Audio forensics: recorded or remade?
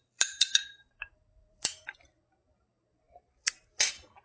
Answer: remade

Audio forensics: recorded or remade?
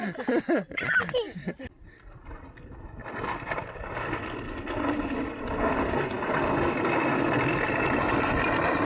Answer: recorded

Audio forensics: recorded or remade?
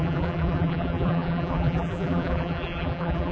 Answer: remade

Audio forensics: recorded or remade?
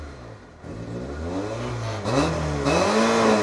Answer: recorded